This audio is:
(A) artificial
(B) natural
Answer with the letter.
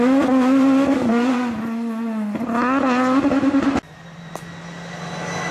B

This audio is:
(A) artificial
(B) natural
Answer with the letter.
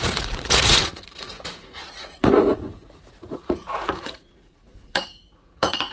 A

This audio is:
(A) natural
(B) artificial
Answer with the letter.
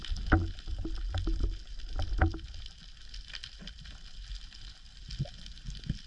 A